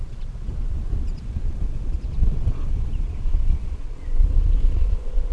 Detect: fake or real fake